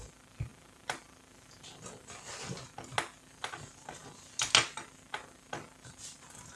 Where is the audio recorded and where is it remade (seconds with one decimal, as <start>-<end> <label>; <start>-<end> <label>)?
0.0-6.6 recorded